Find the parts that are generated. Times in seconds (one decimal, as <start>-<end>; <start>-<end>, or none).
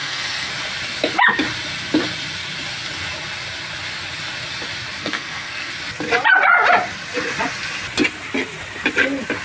0.0-0.5; 5.0-5.7